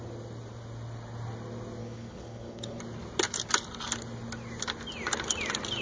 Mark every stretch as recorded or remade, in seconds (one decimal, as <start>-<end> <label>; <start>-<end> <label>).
0.0-1.8 recorded; 1.8-2.8 remade; 2.8-5.8 recorded